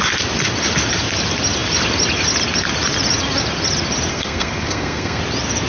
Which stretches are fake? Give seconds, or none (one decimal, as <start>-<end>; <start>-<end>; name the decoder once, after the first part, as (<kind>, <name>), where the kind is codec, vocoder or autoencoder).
4.1-5.2 (codec, SNAC)